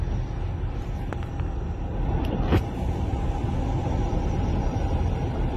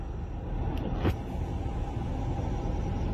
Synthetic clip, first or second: first